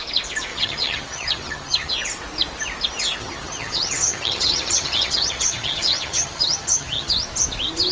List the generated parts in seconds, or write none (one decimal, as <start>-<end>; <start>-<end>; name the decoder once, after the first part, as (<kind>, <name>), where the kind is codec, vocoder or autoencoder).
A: 0.5-1.9 (vocoder, HiFi-GAN); 3.2-7.1